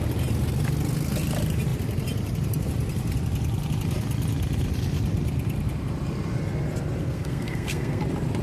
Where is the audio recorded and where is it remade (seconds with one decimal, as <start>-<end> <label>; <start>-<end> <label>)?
0.0-7.0 recorded; 7.0-8.0 remade; 8.0-8.4 recorded